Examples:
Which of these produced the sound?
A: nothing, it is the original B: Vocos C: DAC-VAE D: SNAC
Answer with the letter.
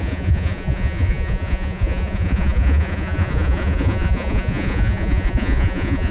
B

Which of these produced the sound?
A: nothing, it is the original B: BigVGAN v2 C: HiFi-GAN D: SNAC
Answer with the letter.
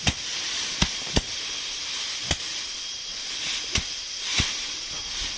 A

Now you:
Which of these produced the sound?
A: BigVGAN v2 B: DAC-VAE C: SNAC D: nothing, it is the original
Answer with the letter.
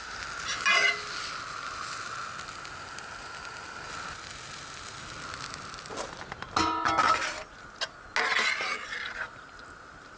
D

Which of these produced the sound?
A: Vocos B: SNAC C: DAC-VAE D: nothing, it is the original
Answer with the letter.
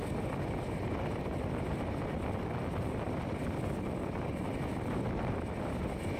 D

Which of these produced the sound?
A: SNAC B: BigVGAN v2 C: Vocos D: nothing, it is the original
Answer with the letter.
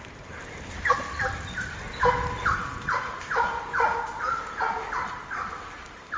D